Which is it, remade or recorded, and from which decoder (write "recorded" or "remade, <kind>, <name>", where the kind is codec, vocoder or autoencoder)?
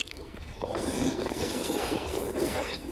remade, codec, SNAC